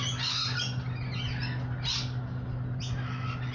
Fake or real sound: real